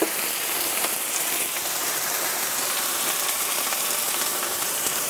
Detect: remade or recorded remade